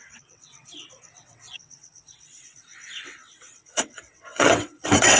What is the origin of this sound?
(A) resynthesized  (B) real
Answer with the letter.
A